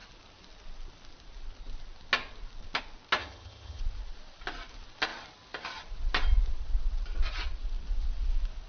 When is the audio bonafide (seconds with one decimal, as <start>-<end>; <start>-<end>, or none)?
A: 0.0-3.2; 3.8-8.7